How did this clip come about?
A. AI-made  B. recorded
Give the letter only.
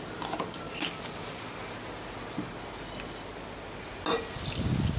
B